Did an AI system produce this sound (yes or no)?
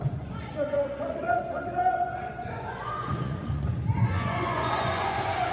yes